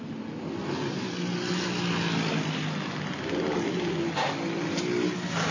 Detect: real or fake real